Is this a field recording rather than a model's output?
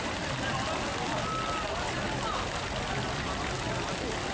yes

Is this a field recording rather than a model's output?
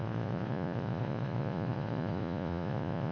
no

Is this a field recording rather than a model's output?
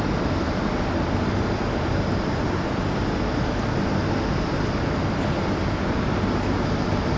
yes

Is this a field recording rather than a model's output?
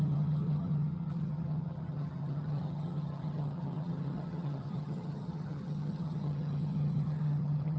no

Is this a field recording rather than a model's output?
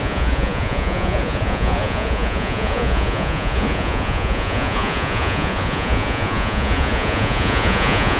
no